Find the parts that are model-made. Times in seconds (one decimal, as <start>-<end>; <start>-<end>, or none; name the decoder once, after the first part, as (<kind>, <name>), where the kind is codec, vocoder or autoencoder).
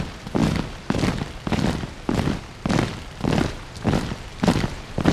0.0-0.4 (vocoder, BigVGAN v2); 3.5-4.3